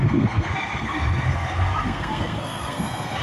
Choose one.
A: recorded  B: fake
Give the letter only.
B